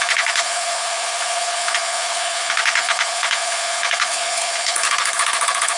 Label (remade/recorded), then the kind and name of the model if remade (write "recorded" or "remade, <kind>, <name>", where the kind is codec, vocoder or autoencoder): remade, codec, HILCodec